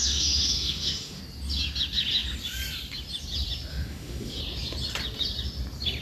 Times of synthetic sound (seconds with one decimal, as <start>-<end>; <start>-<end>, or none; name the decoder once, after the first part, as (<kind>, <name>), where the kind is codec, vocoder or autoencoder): 0.0-1.2 (autoencoder, DAC-VAE); 3.7-4.4